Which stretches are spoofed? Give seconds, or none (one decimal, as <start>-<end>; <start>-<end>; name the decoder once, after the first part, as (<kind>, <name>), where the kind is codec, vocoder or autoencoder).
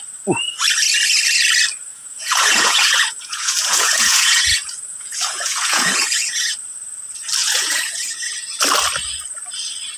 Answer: 1.9-6.5 (vocoder, Vocos); 7.4-8.2